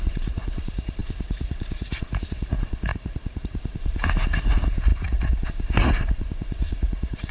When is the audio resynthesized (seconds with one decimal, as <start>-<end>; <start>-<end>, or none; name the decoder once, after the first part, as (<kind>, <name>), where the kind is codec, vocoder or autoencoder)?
0.0-7.3 (vocoder, Vocos)